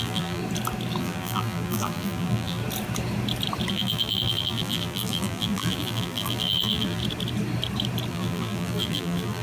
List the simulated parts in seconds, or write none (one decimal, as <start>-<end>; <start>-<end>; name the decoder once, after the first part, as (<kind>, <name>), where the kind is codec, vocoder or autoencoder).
0.0-0.4 (vocoder, BigVGAN v2); 1.0-2.6; 3.7-7.0; 8.1-9.4

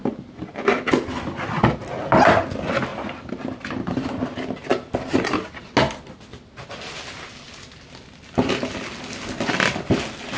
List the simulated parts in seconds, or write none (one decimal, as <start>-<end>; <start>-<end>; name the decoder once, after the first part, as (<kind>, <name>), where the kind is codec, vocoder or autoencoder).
2.9-4.2 (vocoder, BigVGAN v2)

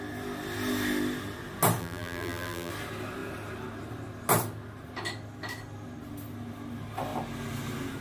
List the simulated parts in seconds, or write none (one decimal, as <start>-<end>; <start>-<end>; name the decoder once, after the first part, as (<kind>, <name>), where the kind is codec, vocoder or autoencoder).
1.8-2.7 (vocoder, BigVGAN v2)